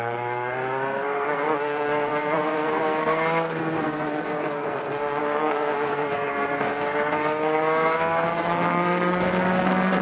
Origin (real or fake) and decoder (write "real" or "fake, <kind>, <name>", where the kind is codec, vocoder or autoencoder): fake, codec, SNAC